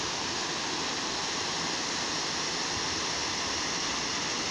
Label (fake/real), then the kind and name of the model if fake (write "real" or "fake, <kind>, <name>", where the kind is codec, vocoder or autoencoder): real